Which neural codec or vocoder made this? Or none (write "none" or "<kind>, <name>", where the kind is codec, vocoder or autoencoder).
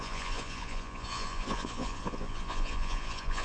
vocoder, Vocos